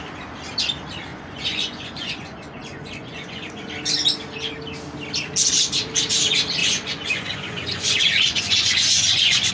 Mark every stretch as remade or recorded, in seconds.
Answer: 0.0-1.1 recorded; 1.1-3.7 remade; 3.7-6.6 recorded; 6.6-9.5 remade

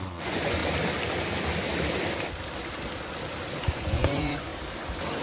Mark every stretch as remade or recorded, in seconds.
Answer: 0.0-0.6 remade; 0.6-3.7 recorded; 3.7-4.5 remade; 4.5-5.2 recorded

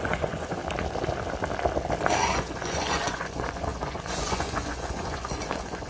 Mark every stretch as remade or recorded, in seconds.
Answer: 0.0-0.6 remade; 0.6-2.2 recorded; 2.2-5.9 remade

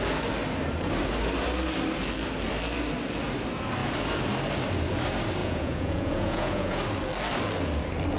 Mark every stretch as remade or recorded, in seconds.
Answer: 0.0-5.4 recorded; 5.4-6.8 remade; 6.8-8.2 recorded

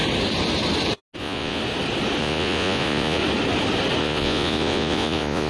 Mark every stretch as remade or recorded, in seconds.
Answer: 0.0-1.2 recorded; 1.2-1.6 remade; 1.6-2.2 recorded; 2.2-3.2 remade; 3.2-4.0 recorded; 4.0-5.5 remade

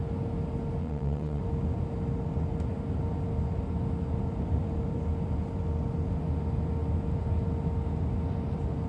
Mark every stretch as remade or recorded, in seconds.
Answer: 0.0-0.8 recorded; 0.8-1.4 remade; 1.4-8.9 recorded